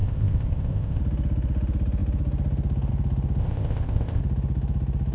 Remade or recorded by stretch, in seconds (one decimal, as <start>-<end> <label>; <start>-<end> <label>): 0.0-1.0 remade; 1.0-3.4 recorded; 3.4-4.2 remade; 4.2-5.1 recorded